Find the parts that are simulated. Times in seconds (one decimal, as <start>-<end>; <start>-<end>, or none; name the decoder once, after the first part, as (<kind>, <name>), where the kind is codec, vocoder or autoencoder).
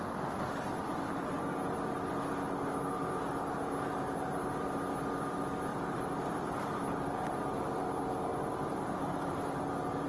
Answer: 5.7-7.0 (vocoder, BigVGAN v2); 8.3-9.6